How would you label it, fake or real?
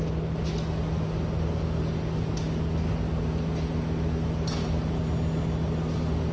real